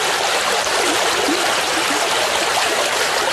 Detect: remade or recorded recorded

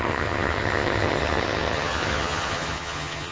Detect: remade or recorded remade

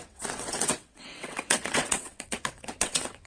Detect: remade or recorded remade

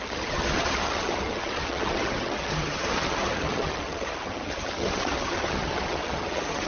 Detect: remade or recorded remade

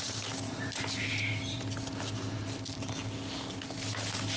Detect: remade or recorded recorded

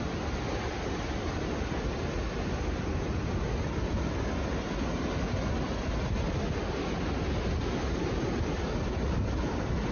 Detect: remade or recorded recorded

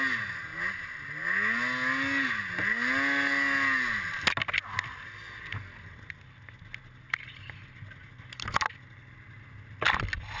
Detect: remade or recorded recorded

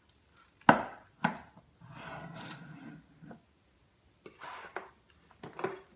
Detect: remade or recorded recorded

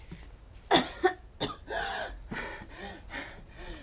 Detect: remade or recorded recorded